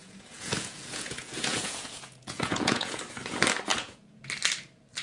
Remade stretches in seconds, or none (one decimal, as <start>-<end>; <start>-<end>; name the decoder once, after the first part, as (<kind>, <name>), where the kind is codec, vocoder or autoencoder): 0.0-3.0 (vocoder, Vocos); 3.7-4.3